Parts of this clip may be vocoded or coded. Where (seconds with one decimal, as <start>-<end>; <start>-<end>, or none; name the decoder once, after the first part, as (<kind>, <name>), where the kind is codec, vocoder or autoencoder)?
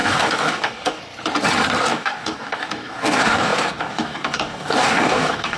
0.0-1.0 (codec, DAC); 1.9-5.6